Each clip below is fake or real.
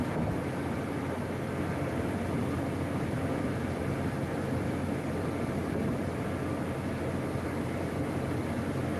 real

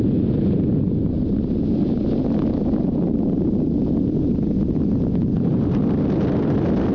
real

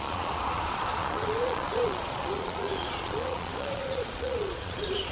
fake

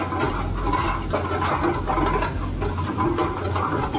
real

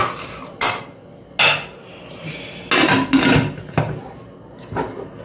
real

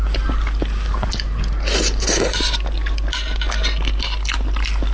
real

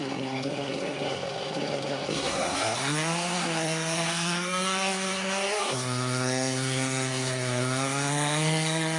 fake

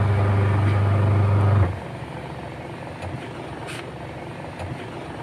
fake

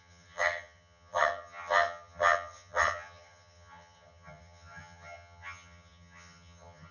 fake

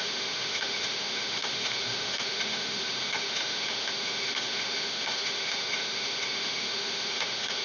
fake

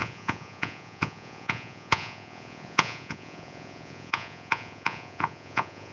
fake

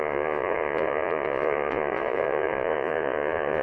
fake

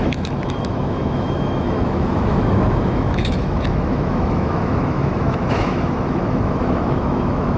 fake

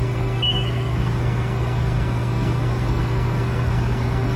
fake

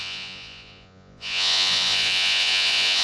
fake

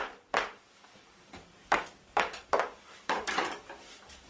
fake